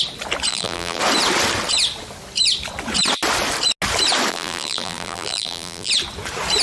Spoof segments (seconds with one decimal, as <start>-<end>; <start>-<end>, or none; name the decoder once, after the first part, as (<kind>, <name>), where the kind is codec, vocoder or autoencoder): 0.5-1.0 (vocoder, BigVGAN v2); 4.3-5.9